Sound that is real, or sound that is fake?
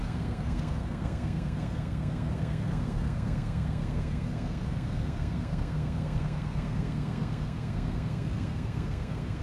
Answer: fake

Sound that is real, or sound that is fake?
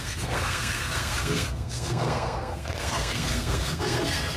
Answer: fake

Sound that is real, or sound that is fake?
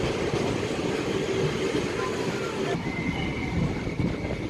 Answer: real